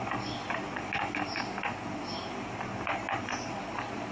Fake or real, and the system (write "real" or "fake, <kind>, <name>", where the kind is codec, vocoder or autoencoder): real